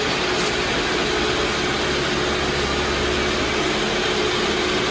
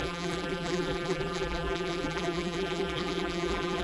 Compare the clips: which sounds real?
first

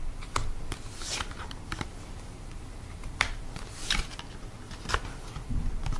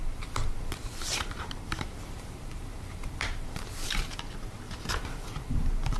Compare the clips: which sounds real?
first